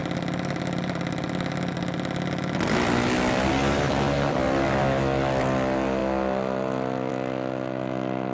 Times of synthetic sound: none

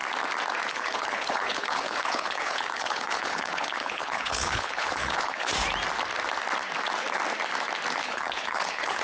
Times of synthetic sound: 0.7-5.5 (codec, HILCodec); 8.0-9.0